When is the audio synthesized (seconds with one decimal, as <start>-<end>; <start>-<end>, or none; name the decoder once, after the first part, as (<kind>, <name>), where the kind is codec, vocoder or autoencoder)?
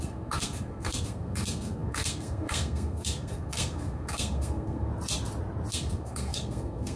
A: 0.0-4.9 (codec, SNAC); 5.7-7.0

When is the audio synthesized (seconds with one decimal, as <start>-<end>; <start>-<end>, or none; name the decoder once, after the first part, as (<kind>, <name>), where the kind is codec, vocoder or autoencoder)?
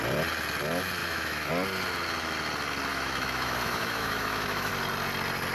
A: 1.0-1.5 (autoencoder, DAC-VAE); 2.9-4.7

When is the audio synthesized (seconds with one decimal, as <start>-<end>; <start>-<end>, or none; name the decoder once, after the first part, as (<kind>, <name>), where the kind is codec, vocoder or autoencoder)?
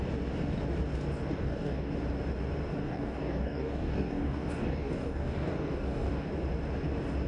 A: 1.3-1.9 (codec, DAC); 2.8-6.3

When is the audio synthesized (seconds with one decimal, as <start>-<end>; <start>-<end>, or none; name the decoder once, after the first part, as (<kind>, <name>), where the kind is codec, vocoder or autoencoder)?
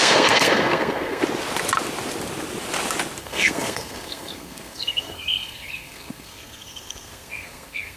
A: 0.0-1.2 (codec, SNAC); 3.2-8.0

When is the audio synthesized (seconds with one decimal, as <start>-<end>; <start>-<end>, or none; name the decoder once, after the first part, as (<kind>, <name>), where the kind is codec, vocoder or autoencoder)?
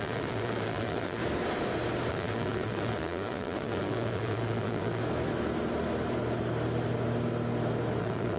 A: 0.0-1.2 (vocoder, Vocos); 2.1-5.0; 8.0-8.4